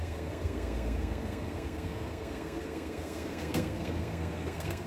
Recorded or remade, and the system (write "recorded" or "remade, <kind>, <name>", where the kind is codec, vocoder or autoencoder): remade, codec, SNAC